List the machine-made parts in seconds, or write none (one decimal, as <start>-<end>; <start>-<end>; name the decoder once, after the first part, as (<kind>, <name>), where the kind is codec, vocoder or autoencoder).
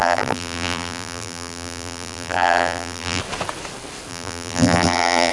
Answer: 0.0-3.2 (vocoder, BigVGAN v2); 4.1-5.3